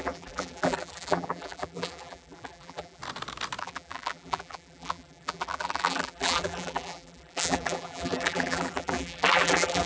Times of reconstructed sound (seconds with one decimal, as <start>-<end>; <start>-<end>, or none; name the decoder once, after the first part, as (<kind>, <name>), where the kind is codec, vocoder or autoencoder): 0.0-3.0 (vocoder, BigVGAN v2); 3.6-9.9